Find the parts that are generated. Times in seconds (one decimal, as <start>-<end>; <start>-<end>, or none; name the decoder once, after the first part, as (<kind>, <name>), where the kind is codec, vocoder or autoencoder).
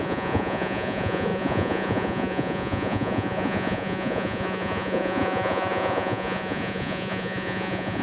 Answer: 0.0-8.0 (vocoder, Vocos)